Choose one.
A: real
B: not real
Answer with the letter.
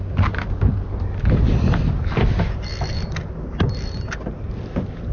A